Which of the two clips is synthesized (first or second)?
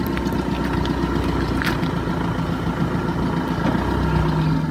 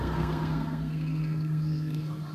second